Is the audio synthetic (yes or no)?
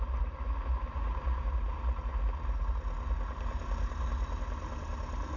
no